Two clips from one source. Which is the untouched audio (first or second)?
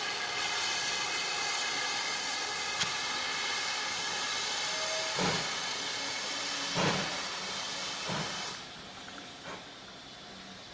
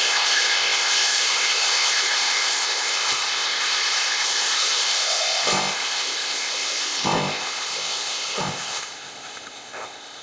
first